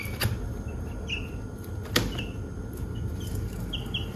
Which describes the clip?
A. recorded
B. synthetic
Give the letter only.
A